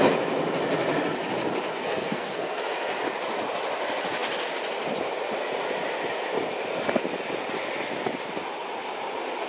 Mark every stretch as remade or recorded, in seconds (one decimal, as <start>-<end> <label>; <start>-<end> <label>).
0.0-1.7 recorded; 1.7-2.6 remade; 2.6-9.5 recorded